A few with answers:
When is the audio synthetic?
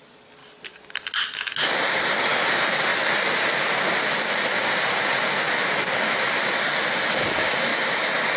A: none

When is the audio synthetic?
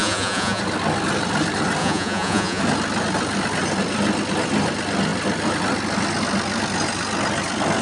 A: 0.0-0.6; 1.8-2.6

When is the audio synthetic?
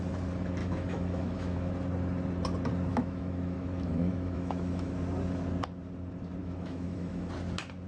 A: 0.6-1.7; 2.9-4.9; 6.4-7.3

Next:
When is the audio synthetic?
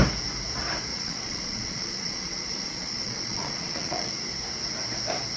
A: 0.9-4.1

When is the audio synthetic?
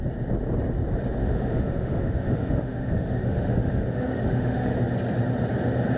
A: 1.2-4.8